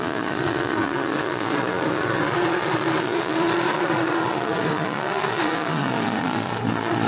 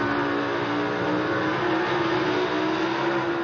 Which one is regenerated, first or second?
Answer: first